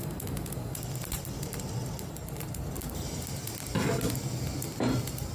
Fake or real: real